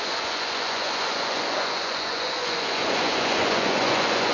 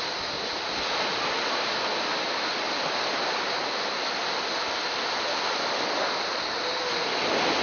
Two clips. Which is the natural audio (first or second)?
second